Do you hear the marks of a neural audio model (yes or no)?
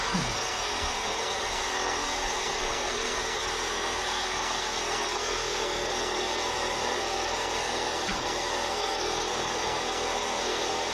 yes